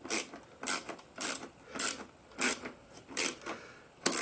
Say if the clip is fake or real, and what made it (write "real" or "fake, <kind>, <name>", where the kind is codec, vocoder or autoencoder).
fake, vocoder, BigVGAN v2